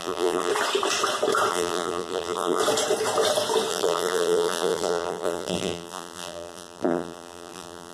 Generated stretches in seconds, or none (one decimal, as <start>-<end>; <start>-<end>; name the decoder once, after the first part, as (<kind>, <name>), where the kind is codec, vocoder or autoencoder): 0.0-0.5 (vocoder, BigVGAN v2); 1.5-2.6; 3.7-7.9